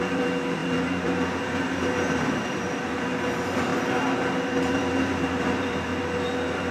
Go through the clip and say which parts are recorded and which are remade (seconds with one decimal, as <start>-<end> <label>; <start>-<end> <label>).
0.0-3.7 remade; 3.7-4.5 recorded; 4.5-5.9 remade; 5.9-6.7 recorded